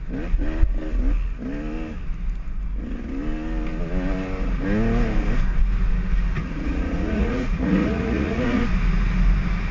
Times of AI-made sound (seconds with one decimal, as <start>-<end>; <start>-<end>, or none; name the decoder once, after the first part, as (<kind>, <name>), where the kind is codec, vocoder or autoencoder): 6.4-8.6 (vocoder, Vocos)